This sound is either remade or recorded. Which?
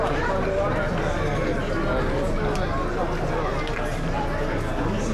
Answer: recorded